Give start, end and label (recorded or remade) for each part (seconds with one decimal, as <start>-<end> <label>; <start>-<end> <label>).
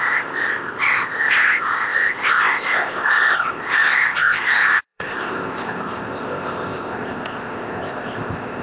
0.0-8.6 remade